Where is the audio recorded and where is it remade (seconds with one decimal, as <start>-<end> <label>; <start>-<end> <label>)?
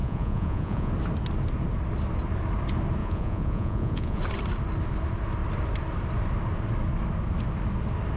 0.0-0.9 remade; 0.9-3.0 recorded; 3.0-4.2 remade; 4.2-8.2 recorded